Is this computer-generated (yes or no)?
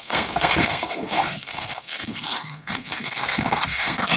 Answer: yes